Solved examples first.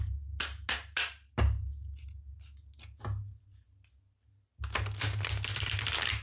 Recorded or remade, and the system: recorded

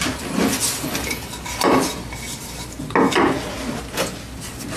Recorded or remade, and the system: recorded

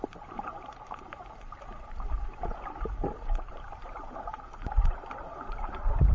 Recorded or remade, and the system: remade, vocoder, BigVGAN v2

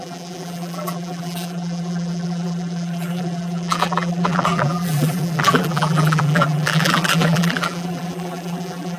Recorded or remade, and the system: remade, vocoder, BigVGAN v2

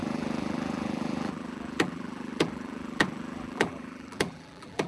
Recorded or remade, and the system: remade, vocoder, BigVGAN v2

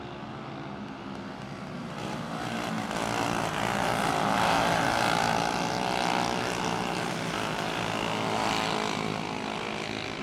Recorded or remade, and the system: recorded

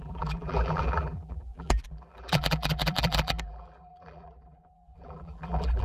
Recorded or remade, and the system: remade, vocoder, BigVGAN v2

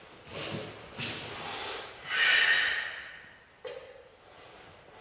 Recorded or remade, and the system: recorded